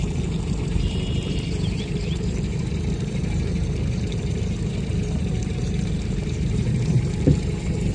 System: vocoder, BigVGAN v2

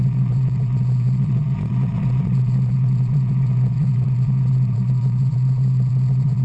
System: vocoder, Vocos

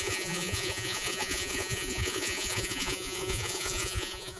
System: vocoder, Vocos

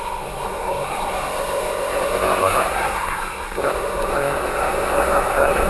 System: codec, SNAC